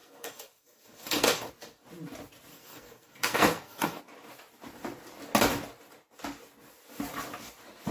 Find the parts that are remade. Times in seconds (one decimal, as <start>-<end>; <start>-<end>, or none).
0.0-1.5; 2.5-4.0

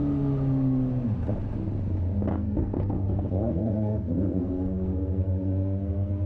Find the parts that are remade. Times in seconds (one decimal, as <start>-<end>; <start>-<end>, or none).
2.3-6.3